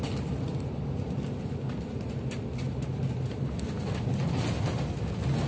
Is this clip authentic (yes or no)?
yes